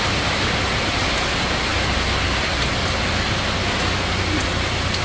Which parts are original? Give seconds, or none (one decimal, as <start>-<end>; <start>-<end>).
0.0-5.0